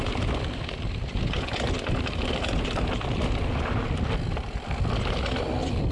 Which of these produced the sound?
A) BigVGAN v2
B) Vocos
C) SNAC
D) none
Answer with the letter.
D